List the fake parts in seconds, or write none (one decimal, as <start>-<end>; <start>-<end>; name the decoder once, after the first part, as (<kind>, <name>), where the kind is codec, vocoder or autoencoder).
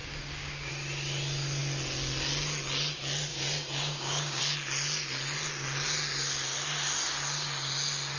0.0-0.7 (codec, DAC); 3.3-4.4